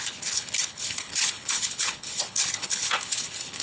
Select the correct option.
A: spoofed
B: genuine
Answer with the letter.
A